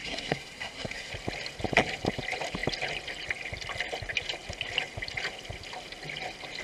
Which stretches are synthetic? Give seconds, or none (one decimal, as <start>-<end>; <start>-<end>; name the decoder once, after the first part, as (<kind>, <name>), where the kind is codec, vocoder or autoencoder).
0.0-1.1 (codec, SNAC)